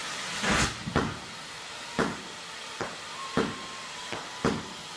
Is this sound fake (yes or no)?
no